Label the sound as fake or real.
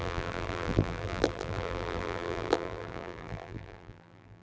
fake